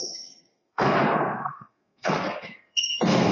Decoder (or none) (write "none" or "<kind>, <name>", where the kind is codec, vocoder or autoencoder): codec, SNAC